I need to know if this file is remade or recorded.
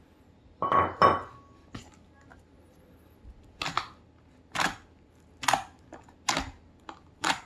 recorded